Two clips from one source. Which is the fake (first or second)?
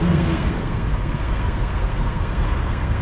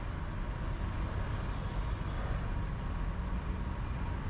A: first